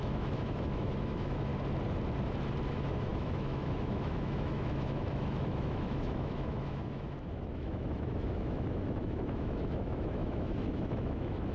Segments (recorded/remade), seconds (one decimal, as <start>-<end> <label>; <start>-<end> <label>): 0.0-1.5 remade; 1.5-2.7 recorded; 2.7-11.5 remade